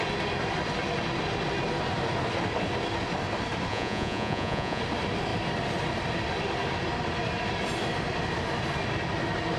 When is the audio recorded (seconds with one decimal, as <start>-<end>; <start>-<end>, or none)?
0.0-3.7; 4.8-9.6